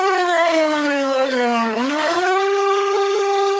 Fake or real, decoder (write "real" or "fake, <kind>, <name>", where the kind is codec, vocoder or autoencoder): fake, codec, SNAC